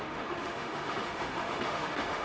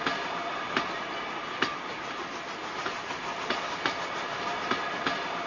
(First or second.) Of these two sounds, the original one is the second